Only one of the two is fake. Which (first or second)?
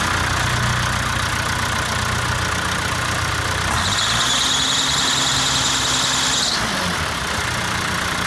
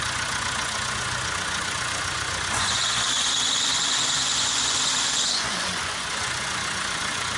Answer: second